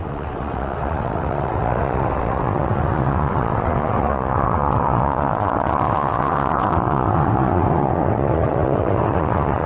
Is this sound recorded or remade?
remade